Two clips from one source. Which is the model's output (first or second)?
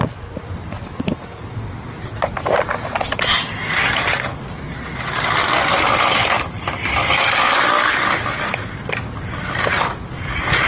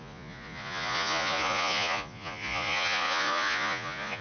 second